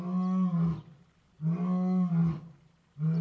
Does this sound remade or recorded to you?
recorded